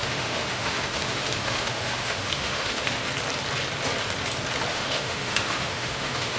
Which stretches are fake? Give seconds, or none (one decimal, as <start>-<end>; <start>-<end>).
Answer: 0.0-3.0; 4.7-6.4